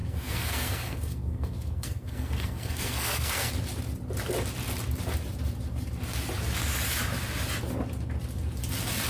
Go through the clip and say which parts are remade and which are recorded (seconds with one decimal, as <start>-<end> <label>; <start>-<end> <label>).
0.0-3.5 remade; 3.5-9.1 recorded

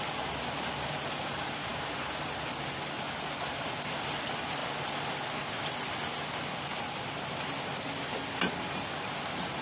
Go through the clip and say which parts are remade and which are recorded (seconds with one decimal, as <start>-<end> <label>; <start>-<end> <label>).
0.0-9.6 recorded